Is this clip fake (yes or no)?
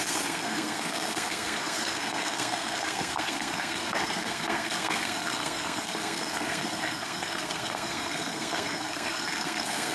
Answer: yes